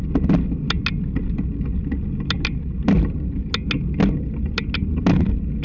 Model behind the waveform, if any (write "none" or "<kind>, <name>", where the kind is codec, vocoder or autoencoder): none